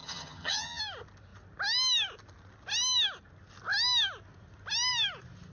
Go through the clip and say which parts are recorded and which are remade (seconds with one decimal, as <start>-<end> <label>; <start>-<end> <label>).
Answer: 0.0-0.8 remade; 0.8-5.5 recorded